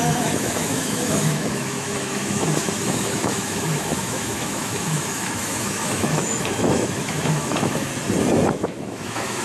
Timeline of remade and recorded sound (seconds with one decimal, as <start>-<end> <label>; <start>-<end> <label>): 0.0-7.9 remade; 7.9-8.5 recorded; 8.5-9.4 remade